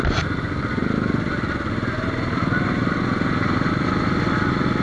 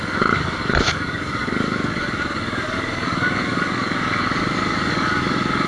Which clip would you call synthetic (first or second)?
second